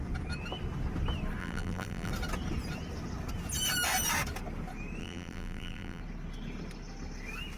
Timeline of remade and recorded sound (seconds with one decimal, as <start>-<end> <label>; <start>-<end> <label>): 0.0-1.4 recorded; 1.4-2.1 remade; 2.1-5.0 recorded; 5.0-6.0 remade; 6.0-7.6 recorded